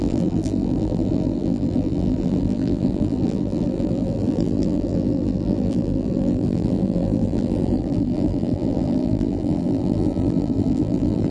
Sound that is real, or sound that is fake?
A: fake